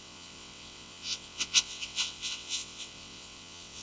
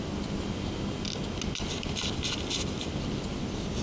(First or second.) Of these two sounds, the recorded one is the second